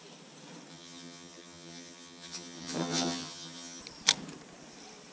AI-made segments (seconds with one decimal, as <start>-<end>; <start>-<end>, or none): 0.7-3.8